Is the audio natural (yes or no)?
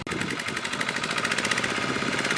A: yes